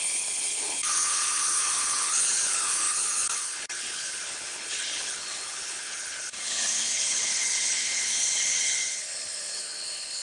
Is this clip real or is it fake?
fake